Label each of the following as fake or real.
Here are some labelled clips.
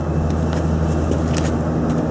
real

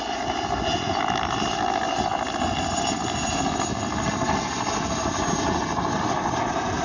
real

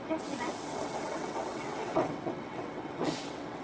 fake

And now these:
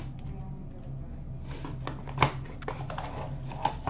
real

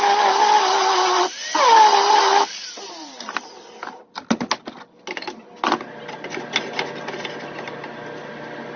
real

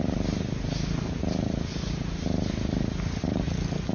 real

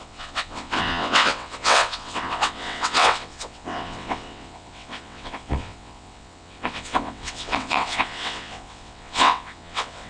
fake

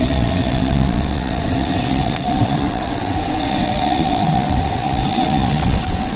fake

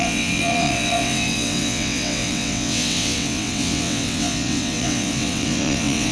fake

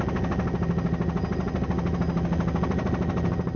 real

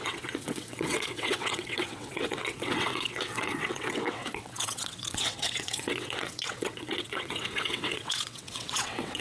fake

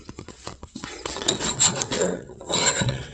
fake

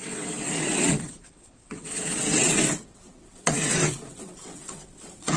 fake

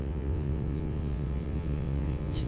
fake